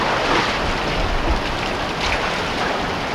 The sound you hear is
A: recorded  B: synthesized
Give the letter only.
A